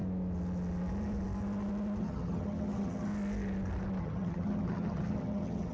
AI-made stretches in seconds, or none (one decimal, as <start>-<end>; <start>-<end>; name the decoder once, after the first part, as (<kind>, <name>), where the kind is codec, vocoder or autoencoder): 2.0-3.1 (vocoder, HiFi-GAN); 4.0-5.7